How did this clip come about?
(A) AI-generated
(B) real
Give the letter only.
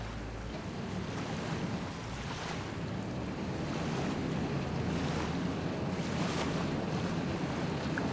B